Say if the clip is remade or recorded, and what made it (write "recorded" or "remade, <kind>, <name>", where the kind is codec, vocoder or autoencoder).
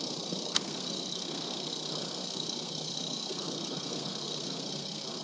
remade, codec, SNAC